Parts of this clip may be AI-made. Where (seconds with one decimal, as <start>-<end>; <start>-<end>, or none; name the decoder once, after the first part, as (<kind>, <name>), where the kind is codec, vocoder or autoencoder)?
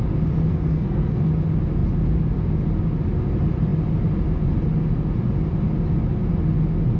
0.5-1.2 (codec, SNAC)